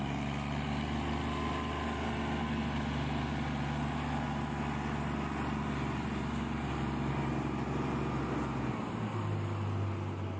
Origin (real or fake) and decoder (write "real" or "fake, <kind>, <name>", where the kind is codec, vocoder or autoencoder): real